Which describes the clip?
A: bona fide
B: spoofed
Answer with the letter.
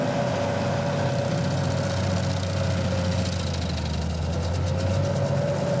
A